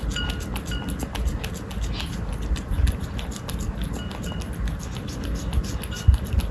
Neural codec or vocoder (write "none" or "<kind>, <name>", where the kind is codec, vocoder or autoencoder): none